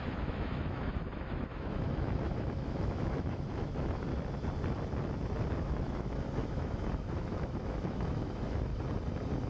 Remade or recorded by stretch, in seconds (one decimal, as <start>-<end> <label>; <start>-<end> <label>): 0.0-4.1 remade; 4.1-5.6 recorded; 5.6-8.7 remade; 8.7-9.5 recorded